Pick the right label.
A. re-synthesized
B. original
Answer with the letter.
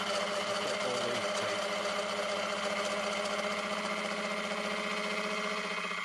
B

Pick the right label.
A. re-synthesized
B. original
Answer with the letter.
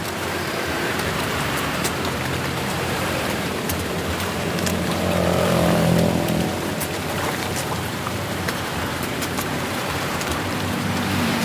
A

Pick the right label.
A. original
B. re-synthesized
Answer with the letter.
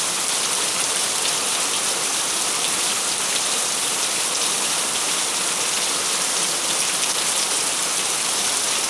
B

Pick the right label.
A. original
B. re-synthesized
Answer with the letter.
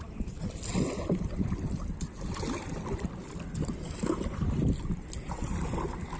A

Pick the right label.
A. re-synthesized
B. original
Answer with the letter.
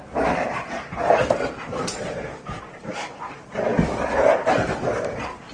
A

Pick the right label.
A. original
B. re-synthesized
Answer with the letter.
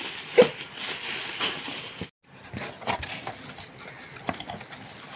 A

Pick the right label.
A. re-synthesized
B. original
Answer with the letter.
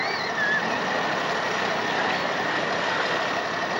B